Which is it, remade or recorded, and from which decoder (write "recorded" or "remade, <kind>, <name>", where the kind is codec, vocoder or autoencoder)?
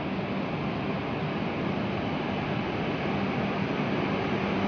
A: recorded